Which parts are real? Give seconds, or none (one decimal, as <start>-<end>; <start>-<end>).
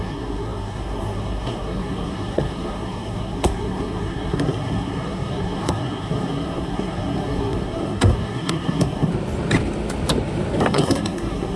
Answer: 9.1-10.6